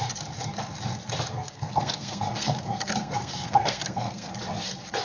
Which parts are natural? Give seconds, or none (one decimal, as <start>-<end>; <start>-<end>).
0.0-1.3; 4.3-5.0